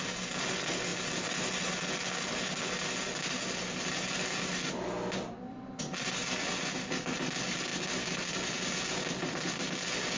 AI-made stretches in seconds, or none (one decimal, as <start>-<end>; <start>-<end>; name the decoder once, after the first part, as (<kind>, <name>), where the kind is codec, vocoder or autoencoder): none